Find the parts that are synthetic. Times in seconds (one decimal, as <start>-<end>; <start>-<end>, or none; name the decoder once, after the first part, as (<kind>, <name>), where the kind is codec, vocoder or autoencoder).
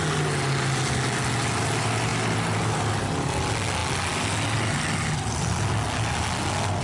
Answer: none